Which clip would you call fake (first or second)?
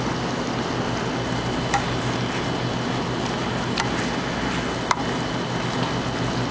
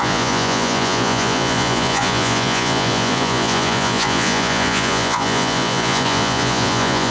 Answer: second